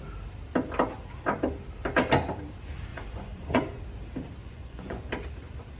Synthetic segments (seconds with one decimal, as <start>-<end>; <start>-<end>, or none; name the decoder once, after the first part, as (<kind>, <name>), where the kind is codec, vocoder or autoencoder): 2.9-3.8 (vocoder, Vocos); 4.4-5.0